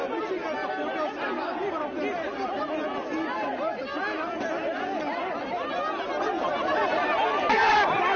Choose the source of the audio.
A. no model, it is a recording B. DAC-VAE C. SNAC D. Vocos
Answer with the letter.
A